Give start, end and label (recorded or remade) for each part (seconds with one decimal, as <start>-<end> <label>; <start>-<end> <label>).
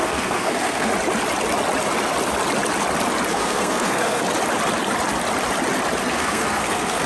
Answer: 0.0-0.9 remade; 0.9-3.3 recorded; 3.3-4.2 remade; 4.2-6.1 recorded; 6.1-7.1 remade